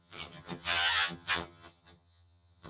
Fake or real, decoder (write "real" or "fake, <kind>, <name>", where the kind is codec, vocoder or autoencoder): fake, vocoder, HiFi-GAN